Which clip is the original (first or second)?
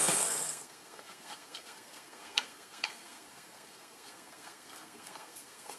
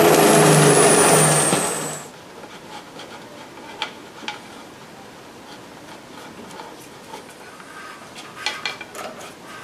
second